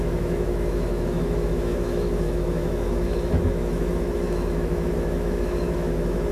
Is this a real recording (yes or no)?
no